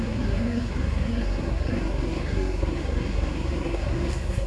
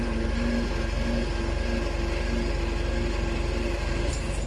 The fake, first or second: first